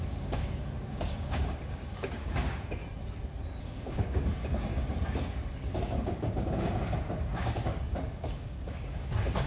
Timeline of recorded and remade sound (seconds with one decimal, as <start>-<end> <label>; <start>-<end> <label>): 0.0-2.8 remade; 2.8-3.6 recorded; 3.6-4.7 remade; 4.7-5.5 recorded; 5.5-9.5 remade